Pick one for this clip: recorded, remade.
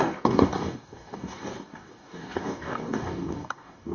remade